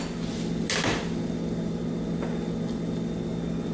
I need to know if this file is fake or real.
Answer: real